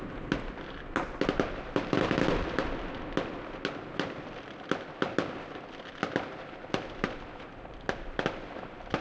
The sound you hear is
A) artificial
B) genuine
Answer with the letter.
B